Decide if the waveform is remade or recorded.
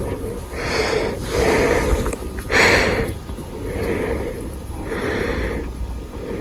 recorded